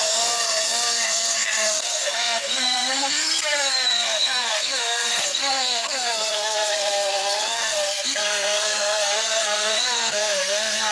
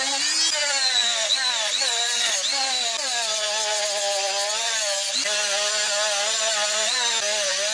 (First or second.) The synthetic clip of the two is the first